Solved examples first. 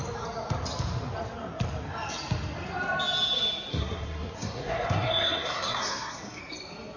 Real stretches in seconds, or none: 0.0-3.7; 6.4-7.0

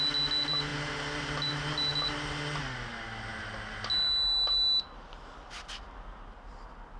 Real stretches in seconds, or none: 0.0-7.0

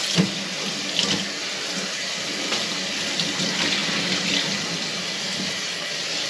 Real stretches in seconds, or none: 0.0-6.3

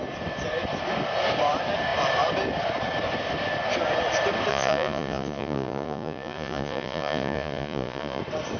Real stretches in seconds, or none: 0.0-4.5; 8.2-8.6